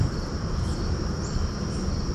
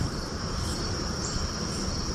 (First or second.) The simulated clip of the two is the second